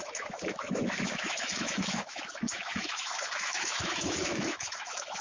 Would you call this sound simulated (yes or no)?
yes